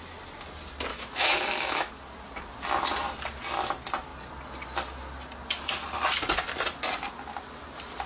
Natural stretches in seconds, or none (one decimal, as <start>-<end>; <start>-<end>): 0.0-0.9; 1.9-8.1